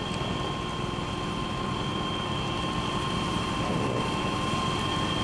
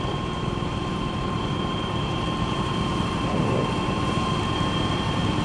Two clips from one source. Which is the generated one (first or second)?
second